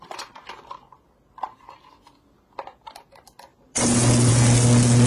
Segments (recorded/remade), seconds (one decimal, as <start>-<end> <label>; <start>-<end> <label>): 0.0-5.1 recorded